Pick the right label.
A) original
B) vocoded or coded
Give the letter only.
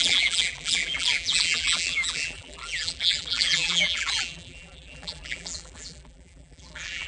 B